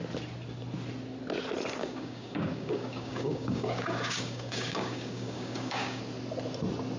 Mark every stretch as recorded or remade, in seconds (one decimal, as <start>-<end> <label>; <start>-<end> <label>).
0.0-1.8 recorded; 1.8-6.0 remade; 6.0-7.0 recorded